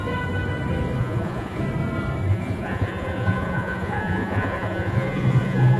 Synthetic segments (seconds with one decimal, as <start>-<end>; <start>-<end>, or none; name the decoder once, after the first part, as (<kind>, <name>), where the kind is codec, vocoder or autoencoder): 1.0-1.6 (vocoder, Vocos); 2.3-5.8